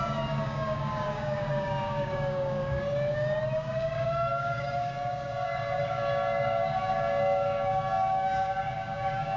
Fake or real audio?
fake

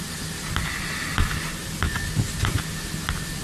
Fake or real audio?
real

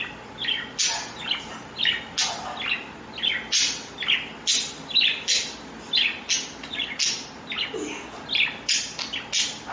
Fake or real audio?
real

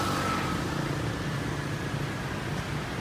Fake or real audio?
real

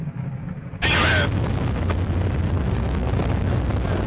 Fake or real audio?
real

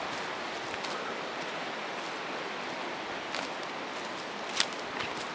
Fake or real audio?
real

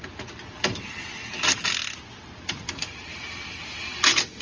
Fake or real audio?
real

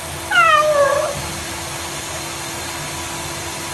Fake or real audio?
real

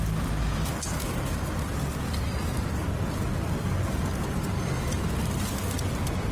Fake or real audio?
real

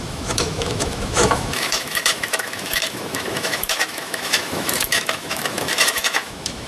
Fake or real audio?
fake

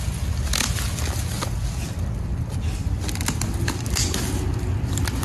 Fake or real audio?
real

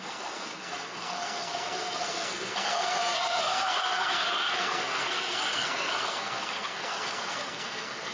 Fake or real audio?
fake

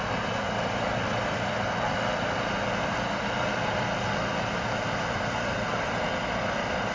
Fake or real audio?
real